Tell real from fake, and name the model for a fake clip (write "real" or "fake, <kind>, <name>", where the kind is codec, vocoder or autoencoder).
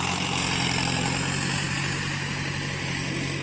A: real